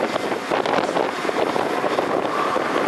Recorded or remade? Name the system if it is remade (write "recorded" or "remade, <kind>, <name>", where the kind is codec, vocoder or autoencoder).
recorded